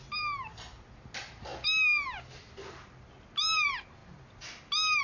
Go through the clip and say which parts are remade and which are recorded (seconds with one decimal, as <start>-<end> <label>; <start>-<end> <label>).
0.0-5.0 recorded